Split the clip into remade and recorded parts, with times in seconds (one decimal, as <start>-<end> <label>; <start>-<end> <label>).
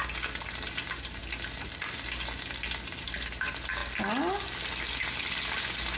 0.0-6.0 recorded